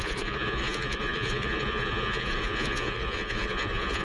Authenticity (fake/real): fake